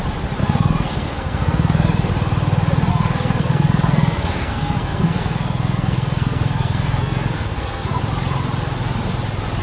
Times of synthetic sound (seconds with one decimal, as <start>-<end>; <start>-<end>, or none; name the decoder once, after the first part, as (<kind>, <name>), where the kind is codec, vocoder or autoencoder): 0.4-2.1 (codec, SNAC); 2.9-8.0